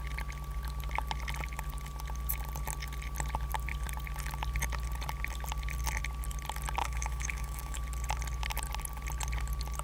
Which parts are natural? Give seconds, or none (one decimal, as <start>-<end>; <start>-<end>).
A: 0.0-6.8; 7.8-9.8